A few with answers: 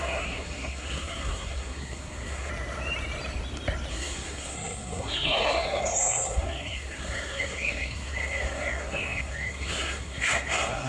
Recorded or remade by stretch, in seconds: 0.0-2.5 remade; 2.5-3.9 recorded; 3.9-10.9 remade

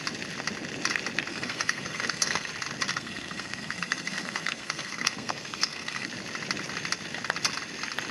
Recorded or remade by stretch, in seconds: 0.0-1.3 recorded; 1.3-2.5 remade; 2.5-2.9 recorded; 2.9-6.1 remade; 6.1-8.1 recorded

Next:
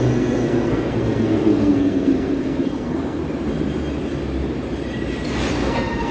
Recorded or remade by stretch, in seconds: 0.0-3.2 remade; 3.2-5.5 recorded; 5.5-6.1 remade

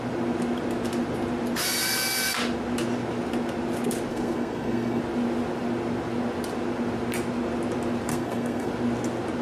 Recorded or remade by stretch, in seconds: 0.0-4.1 recorded; 4.1-5.0 remade; 5.0-8.1 recorded; 8.1-8.7 remade; 8.7-9.4 recorded

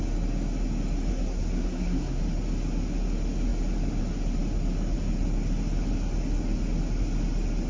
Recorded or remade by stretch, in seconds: 0.0-1.1 recorded; 1.1-2.2 remade; 2.2-7.7 recorded

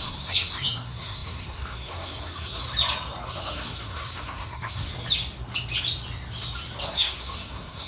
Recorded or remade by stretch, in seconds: 0.0-2.6 remade; 2.6-3.3 recorded; 3.3-4.9 remade; 4.9-6.8 recorded; 6.8-7.9 remade

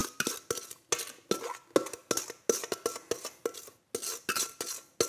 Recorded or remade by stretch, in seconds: 0.0-5.1 recorded

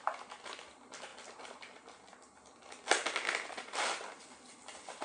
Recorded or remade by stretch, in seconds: 0.0-5.0 recorded